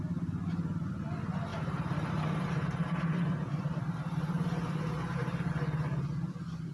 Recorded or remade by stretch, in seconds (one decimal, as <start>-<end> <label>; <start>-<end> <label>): 0.0-1.5 recorded; 1.5-5.5 remade; 5.5-6.7 recorded